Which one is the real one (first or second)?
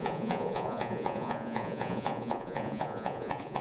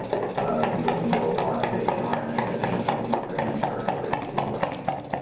second